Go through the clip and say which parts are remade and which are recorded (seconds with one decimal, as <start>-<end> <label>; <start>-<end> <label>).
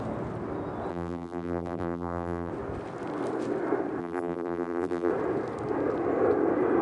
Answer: 0.0-0.9 recorded; 0.9-2.5 remade; 2.5-4.0 recorded; 4.0-5.1 remade; 5.1-6.8 recorded